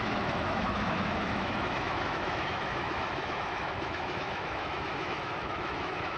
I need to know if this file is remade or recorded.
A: remade